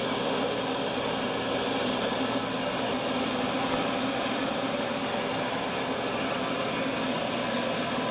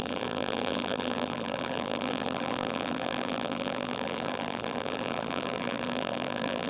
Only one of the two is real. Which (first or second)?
first